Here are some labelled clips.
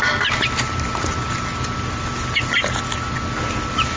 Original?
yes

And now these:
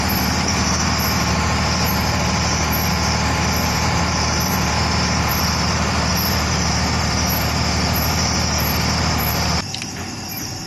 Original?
no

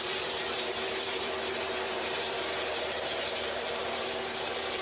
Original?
no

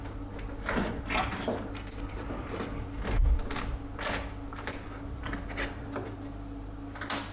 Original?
yes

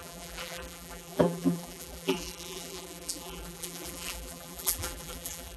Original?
no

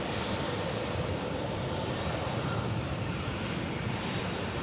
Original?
no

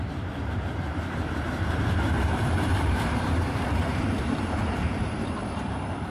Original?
no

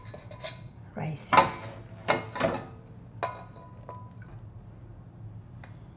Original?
yes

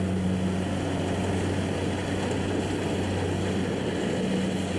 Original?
yes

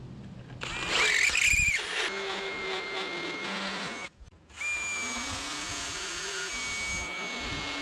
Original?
yes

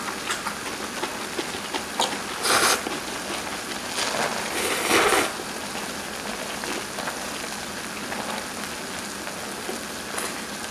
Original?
yes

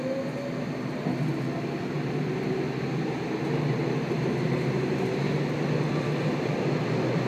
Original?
yes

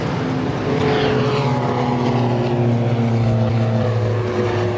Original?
yes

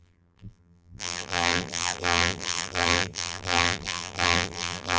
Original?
no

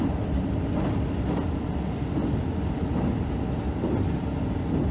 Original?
yes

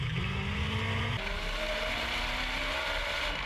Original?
yes